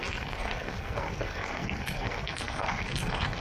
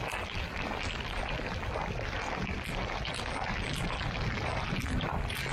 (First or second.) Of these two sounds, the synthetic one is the first